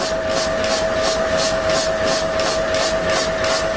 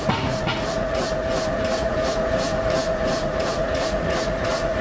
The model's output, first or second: second